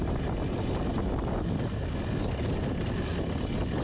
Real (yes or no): yes